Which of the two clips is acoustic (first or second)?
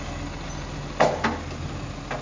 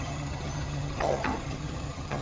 first